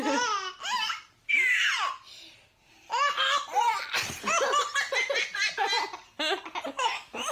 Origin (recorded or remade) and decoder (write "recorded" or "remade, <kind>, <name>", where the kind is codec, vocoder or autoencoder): recorded